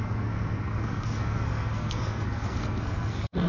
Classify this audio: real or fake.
fake